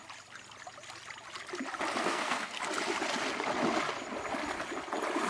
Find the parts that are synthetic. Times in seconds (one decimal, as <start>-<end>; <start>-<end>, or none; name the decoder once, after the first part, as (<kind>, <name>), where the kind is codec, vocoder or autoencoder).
2.0-2.6 (codec, SNAC)